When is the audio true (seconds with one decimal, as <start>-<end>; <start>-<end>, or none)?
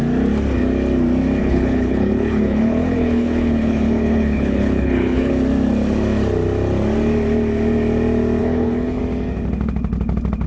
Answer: 0.0-1.4; 5.3-8.4; 9.0-10.5